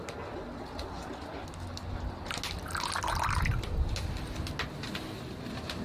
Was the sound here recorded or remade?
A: recorded